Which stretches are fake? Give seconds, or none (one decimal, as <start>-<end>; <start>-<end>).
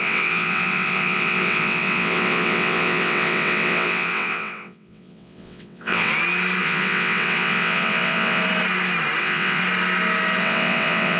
0.0-6.1; 6.6-8.4; 9.2-9.6; 10.4-11.2